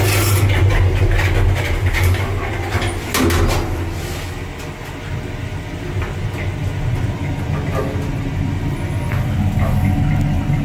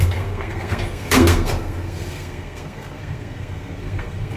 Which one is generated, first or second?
second